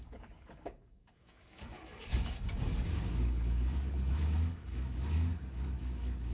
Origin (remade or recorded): remade